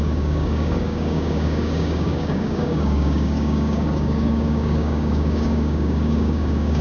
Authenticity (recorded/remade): remade